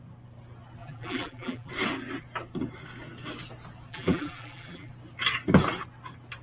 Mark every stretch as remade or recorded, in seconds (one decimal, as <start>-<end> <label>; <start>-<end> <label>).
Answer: 0.0-0.8 recorded; 0.8-1.7 remade; 1.7-3.9 recorded; 3.9-4.9 remade; 4.9-6.4 recorded